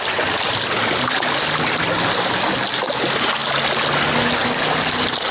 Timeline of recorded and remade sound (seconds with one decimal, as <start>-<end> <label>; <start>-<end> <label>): 0.0-5.3 recorded

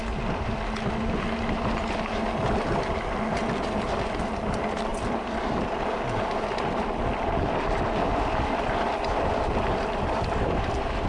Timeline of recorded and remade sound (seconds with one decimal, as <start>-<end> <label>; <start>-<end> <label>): 0.0-11.1 recorded

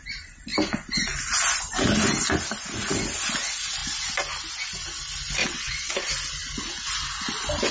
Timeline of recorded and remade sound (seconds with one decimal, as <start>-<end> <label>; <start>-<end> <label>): 0.0-5.4 recorded; 5.4-6.1 remade; 6.1-7.7 recorded

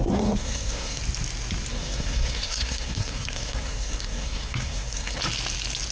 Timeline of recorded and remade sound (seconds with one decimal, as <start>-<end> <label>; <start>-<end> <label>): 0.0-1.0 remade; 1.0-1.7 recorded; 1.7-5.2 remade; 5.2-5.9 recorded

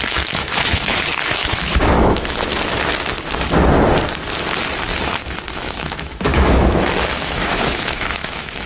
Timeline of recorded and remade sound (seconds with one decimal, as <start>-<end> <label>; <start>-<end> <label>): 0.0-2.5 remade; 2.5-5.5 recorded; 5.5-8.7 remade

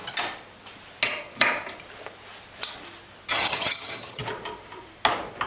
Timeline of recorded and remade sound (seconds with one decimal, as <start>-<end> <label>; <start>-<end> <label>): 0.0-3.3 recorded; 3.3-4.2 remade; 4.2-5.5 recorded